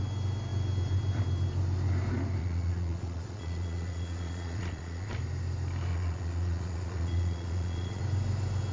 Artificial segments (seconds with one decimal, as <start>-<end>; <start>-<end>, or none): 2.4-5.1; 5.9-8.0